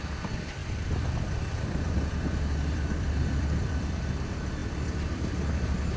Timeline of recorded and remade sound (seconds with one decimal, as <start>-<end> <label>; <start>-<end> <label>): 0.0-0.6 recorded; 0.6-4.1 remade; 4.1-4.6 recorded; 4.6-6.0 remade